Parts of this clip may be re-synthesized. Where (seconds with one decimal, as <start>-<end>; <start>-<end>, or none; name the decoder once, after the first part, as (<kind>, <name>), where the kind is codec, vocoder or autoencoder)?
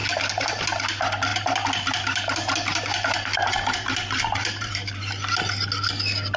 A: 0.0-0.6 (vocoder, BigVGAN v2); 1.3-5.1